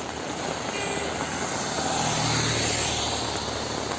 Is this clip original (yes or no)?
yes